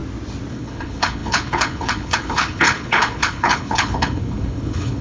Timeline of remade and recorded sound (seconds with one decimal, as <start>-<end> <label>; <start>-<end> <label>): 0.0-0.5 recorded; 0.5-5.0 remade